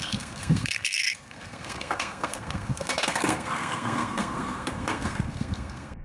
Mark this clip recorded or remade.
remade